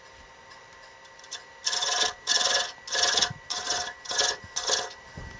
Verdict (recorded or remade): recorded